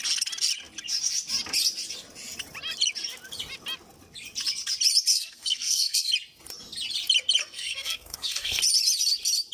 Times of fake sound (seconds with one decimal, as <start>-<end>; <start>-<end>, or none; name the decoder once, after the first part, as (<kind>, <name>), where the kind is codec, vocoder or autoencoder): 5.1-6.1 (codec, SNAC); 7.4-8.6